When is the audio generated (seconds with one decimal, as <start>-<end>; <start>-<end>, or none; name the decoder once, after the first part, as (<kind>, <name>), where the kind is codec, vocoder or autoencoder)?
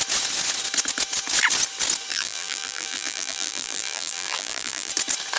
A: 2.1-4.9 (vocoder, BigVGAN v2)